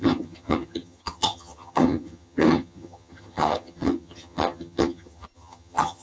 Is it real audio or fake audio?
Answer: fake